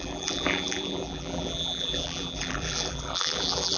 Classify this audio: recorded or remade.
remade